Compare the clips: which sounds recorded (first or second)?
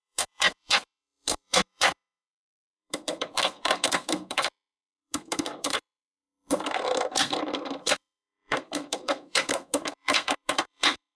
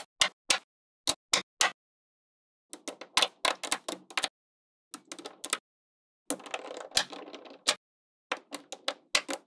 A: second